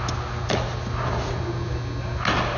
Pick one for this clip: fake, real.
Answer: real